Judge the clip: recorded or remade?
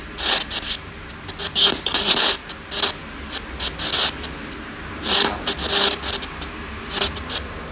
recorded